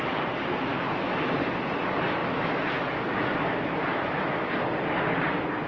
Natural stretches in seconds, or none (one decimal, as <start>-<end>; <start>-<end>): 0.0-0.7; 1.3-2.2; 4.5-5.7